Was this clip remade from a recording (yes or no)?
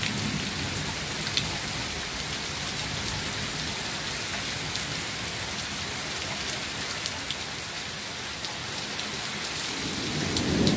no